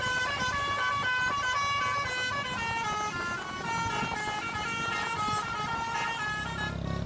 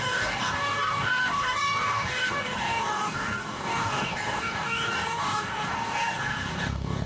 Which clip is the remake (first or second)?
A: second